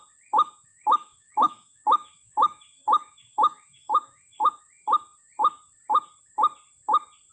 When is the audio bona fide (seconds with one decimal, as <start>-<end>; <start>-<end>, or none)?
0.0-0.7; 4.6-7.3